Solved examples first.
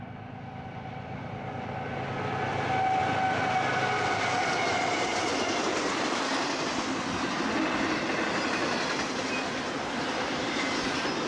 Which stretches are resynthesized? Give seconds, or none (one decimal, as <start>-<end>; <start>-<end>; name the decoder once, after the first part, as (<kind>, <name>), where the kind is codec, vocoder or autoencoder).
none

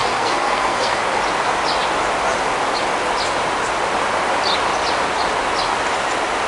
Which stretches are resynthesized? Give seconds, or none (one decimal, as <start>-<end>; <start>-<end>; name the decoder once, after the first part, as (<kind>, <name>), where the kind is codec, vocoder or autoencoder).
0.0-1.0 (codec, SNAC)

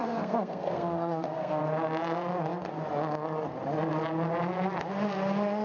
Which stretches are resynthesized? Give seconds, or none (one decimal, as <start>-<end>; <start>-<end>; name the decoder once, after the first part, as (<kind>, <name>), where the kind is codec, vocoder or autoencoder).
0.0-1.6 (codec, SNAC)

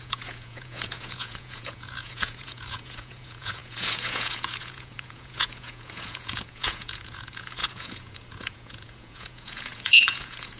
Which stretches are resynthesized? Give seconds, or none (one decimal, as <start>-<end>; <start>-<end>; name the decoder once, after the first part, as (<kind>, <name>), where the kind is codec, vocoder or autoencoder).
0.0-10.6 (vocoder, Vocos)

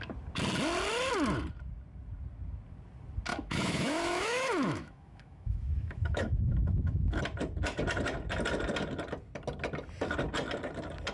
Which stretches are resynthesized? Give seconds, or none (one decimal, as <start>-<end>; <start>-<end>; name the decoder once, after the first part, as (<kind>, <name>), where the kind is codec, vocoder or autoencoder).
3.3-7.2 (autoencoder, DAC-VAE)